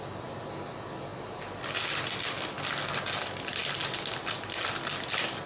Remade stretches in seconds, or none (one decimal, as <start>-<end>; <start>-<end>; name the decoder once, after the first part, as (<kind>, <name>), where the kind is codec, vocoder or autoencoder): none